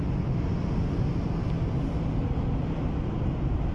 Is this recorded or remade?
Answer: recorded